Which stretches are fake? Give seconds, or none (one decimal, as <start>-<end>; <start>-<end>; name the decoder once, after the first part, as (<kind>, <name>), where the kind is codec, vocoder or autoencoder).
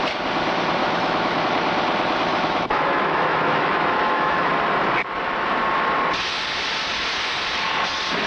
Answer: 0.8-1.4 (autoencoder, DAC-VAE); 2.3-4.5